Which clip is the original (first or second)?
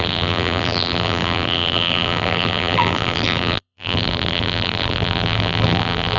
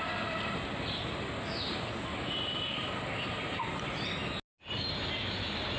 second